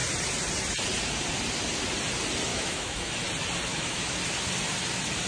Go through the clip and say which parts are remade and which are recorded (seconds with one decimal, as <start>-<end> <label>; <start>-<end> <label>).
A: 0.0-2.5 recorded; 2.5-3.1 remade; 3.1-3.7 recorded; 3.7-4.2 remade; 4.2-5.3 recorded